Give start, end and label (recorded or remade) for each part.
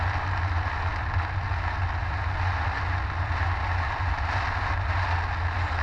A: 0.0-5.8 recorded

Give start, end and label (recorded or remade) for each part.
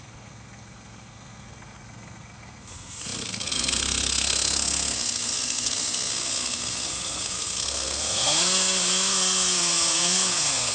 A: 0.0-10.7 remade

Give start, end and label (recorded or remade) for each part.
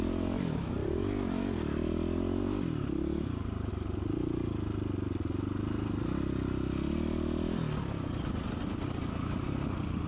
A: 0.0-10.1 recorded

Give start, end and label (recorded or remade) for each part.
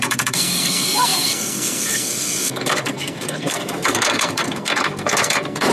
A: 0.0-5.7 remade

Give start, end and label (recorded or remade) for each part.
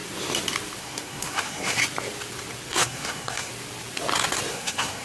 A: 0.0-0.8 recorded; 0.8-1.8 remade; 1.8-2.7 recorded; 2.7-3.5 remade; 3.5-4.5 recorded; 4.5-5.0 remade